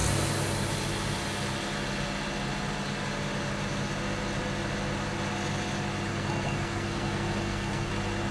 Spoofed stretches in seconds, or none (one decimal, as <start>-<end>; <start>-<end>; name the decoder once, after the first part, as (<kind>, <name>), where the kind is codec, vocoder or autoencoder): 6.1-7.9 (codec, SNAC)